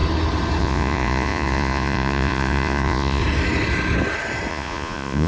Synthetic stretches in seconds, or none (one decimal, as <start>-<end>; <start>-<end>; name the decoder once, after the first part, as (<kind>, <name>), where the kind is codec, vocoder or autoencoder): 0.6-3.2 (vocoder, Vocos); 4.5-5.3